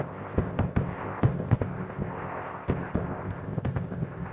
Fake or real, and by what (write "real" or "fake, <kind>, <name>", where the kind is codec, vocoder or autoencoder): fake, codec, ZipCodec